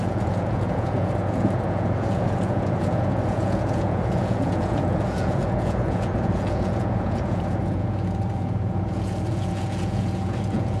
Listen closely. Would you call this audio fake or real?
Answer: fake